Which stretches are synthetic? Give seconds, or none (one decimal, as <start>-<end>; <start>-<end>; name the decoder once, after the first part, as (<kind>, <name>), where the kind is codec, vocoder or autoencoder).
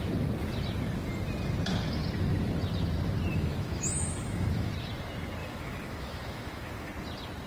3.3-4.7 (autoencoder, DAC-VAE); 5.4-6.9